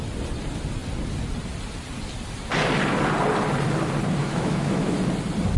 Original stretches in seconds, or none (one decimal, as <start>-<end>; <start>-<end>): 0.0-4.2; 4.9-5.6